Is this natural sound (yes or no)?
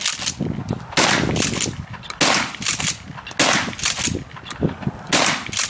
yes